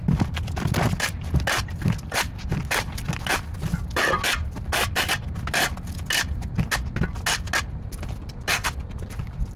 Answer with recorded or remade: recorded